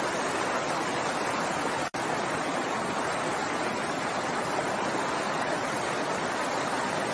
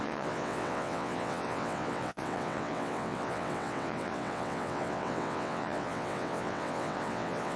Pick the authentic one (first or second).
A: first